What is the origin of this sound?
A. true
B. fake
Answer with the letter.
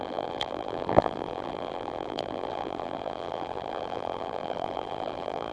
B